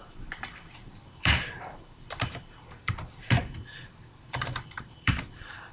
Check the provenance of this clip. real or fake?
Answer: fake